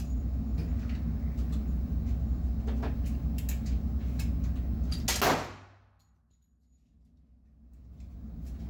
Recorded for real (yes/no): yes